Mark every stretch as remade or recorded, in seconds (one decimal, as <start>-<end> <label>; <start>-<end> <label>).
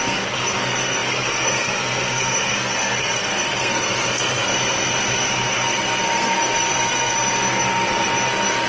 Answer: 0.0-4.5 remade; 4.5-5.5 recorded; 5.5-8.7 remade